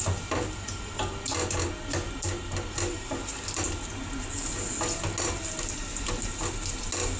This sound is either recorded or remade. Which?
recorded